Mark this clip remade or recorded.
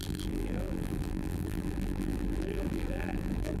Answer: remade